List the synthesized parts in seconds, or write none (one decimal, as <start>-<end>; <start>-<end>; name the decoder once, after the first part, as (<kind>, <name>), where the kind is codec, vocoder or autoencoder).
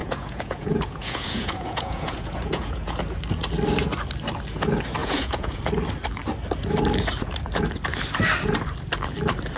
0.0-3.0 (vocoder, Vocos); 5.0-5.6